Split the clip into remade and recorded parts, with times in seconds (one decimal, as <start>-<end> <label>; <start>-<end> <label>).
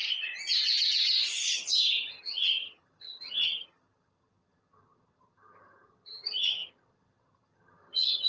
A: 0.0-1.5 recorded; 1.5-8.3 remade